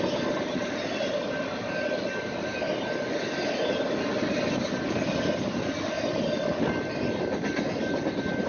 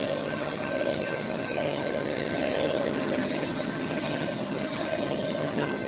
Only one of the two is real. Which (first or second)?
first